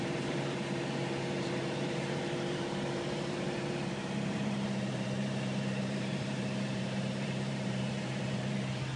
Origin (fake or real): fake